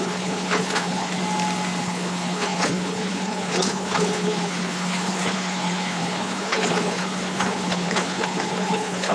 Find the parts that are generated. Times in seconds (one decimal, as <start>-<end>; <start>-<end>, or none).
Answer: 0.0-1.2; 1.8-9.1